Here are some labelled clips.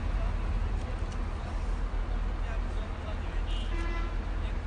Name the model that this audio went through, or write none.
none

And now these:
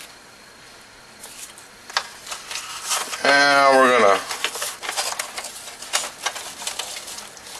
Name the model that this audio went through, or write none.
none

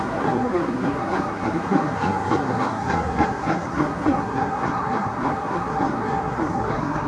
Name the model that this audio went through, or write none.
codec, SNAC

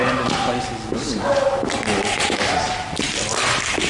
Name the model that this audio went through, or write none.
none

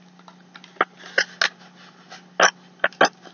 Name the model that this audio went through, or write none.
none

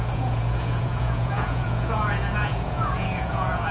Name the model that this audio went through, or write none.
vocoder, Vocos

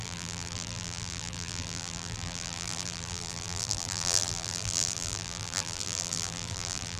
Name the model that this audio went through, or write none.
vocoder, BigVGAN v2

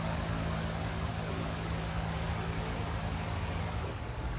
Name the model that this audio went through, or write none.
codec, DAC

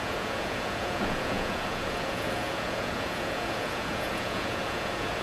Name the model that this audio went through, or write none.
vocoder, Vocos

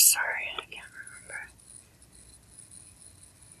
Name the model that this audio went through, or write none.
none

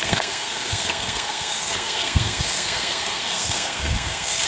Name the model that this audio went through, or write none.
codec, SNAC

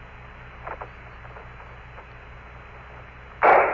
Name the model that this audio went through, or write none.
none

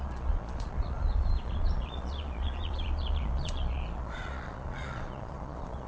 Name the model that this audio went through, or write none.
vocoder, Vocos